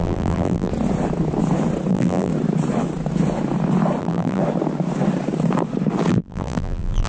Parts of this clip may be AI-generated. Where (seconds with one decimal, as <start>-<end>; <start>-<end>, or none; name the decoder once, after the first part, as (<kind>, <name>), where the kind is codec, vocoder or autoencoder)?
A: 0.0-0.7 (vocoder, BigVGAN v2); 1.9-2.3; 4.0-4.4; 6.1-7.1